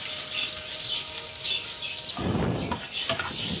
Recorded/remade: recorded